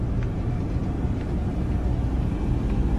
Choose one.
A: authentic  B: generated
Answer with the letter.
A